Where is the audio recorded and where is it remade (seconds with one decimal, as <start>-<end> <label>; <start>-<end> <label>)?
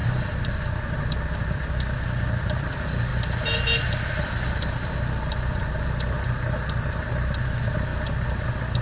0.0-0.6 remade; 0.6-8.8 recorded